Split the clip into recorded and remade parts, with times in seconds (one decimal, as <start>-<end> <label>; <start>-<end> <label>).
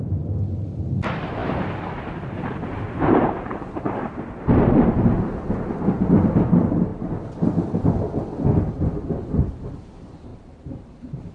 0.0-1.4 recorded; 1.4-5.3 remade; 5.3-10.3 recorded; 10.3-11.3 remade